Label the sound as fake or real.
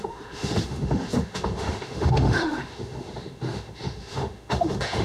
fake